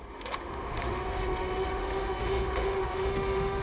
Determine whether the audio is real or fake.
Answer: fake